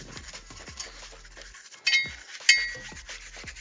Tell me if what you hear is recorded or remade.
recorded